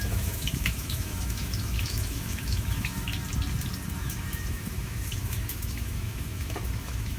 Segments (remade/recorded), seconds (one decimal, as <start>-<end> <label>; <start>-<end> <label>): 0.0-3.1 remade; 3.1-3.9 recorded; 3.9-7.2 remade